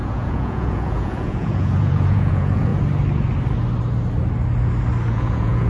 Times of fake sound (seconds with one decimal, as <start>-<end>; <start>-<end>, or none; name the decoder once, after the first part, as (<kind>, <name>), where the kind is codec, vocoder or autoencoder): 0.0-2.7 (vocoder, Vocos); 5.1-5.7